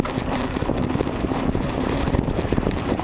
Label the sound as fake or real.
fake